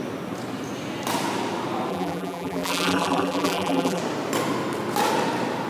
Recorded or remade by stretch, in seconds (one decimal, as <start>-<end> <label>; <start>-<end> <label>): 0.0-1.9 recorded; 1.9-4.0 remade; 4.0-5.7 recorded